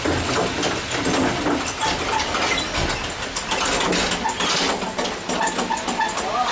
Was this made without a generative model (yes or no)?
yes